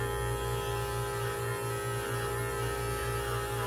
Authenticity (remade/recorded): recorded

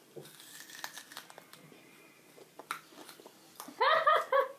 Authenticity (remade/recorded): recorded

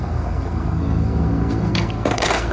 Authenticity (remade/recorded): remade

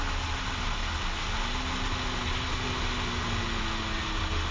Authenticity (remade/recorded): recorded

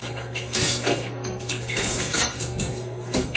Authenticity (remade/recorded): remade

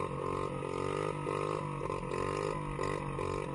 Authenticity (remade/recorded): recorded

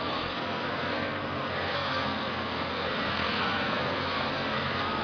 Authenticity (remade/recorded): remade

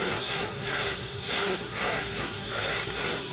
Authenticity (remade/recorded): remade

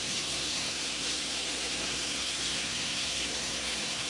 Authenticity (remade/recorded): remade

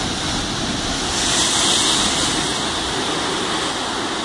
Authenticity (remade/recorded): recorded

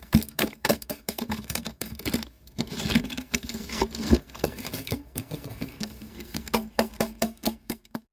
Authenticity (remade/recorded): remade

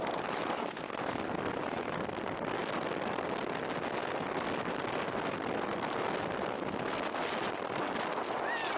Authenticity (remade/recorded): recorded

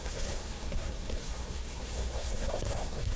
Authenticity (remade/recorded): remade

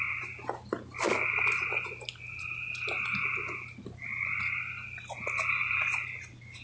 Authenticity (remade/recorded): recorded